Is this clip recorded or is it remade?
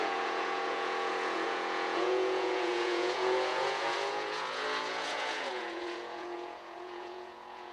remade